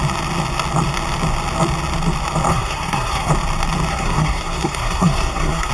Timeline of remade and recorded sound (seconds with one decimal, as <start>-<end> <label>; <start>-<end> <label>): 0.0-2.5 recorded; 2.5-3.3 remade; 3.3-3.9 recorded; 3.9-5.7 remade